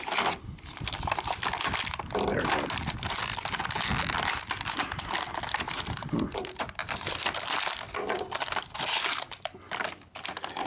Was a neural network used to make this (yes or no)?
no